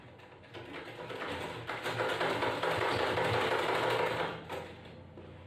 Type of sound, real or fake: real